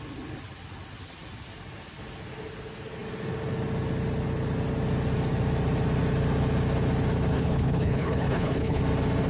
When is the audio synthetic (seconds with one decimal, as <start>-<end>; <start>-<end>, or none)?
7.3-8.8